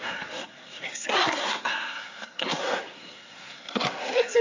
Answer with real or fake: fake